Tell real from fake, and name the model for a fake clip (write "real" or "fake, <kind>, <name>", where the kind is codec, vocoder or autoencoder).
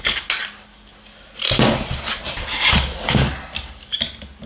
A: real